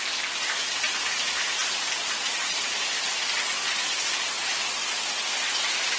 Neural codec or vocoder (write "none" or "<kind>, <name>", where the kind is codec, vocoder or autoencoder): none